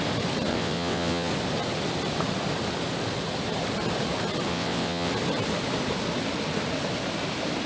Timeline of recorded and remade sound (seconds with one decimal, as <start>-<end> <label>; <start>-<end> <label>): 0.0-0.5 recorded; 0.5-1.3 remade; 1.3-4.5 recorded; 4.5-5.1 remade; 5.1-7.7 recorded